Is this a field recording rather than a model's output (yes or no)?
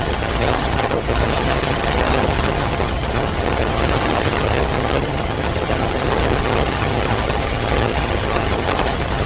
no